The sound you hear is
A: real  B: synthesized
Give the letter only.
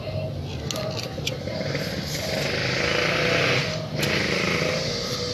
A